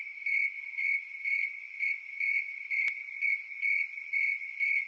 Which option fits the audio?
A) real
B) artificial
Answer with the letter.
A